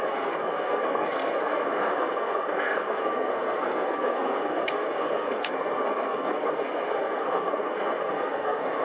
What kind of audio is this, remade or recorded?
remade